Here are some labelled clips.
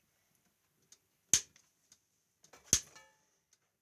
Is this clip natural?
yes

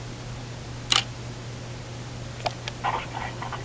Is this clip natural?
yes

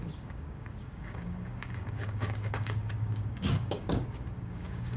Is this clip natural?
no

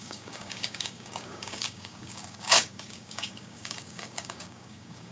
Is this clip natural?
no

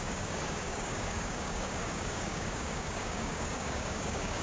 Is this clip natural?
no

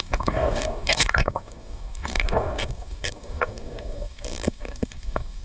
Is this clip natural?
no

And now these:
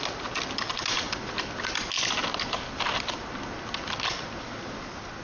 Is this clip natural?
yes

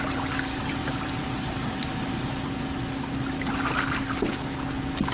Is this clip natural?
yes